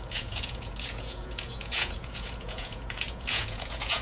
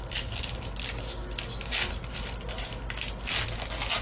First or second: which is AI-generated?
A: first